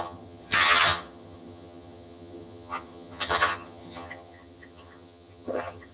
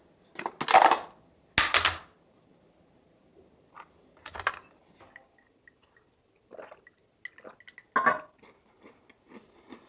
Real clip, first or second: second